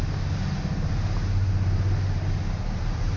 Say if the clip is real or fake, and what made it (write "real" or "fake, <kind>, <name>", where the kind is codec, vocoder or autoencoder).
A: real